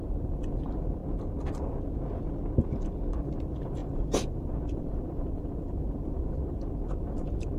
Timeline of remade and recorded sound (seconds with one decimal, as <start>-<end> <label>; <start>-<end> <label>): 0.0-1.0 remade; 1.0-3.4 recorded; 3.4-7.6 remade